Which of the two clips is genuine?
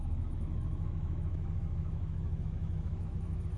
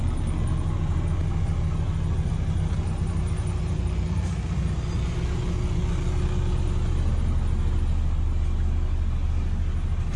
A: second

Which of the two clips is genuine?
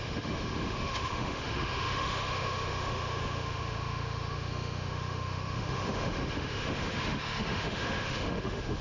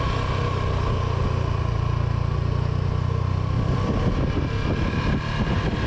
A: second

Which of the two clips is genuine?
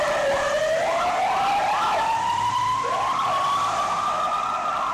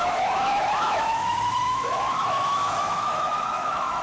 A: first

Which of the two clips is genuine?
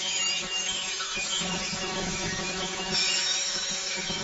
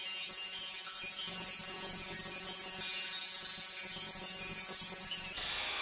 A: second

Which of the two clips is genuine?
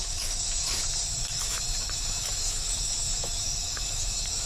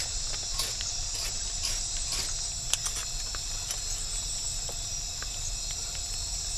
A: second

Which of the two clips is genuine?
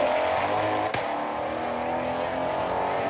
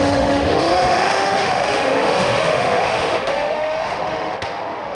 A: first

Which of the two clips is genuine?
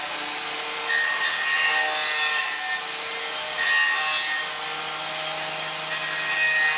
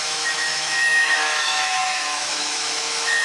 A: first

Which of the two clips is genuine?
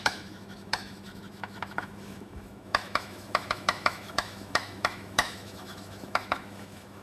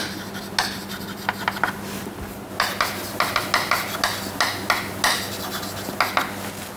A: second